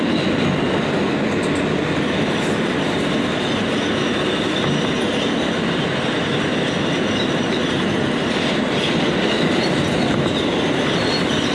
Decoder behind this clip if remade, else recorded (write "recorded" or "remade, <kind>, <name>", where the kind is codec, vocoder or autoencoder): recorded